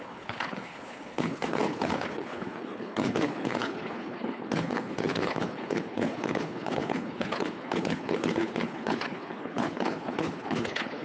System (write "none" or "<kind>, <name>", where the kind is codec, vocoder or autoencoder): codec, HILCodec